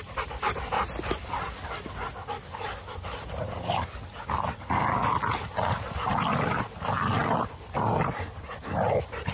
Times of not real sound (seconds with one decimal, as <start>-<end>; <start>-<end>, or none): none